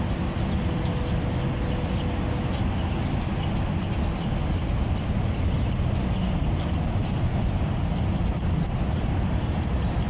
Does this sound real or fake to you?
real